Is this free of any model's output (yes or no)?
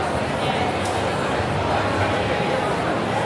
yes